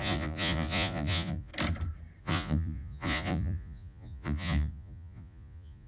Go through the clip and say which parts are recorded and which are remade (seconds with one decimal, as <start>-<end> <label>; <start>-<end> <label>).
0.0-1.5 remade; 1.5-2.2 recorded; 2.2-5.9 remade